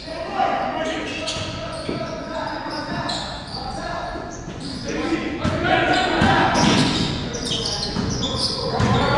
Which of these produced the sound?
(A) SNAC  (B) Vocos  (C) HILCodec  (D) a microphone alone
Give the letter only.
B